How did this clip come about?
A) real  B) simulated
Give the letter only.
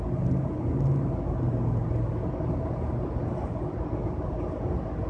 A